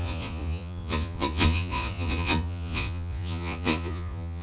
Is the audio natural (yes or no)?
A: no